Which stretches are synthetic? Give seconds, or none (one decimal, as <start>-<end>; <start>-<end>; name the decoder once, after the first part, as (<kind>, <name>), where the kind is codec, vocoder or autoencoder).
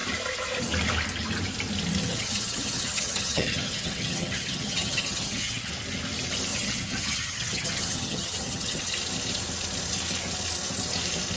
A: 2.0-5.7 (vocoder, HiFi-GAN); 6.5-8.9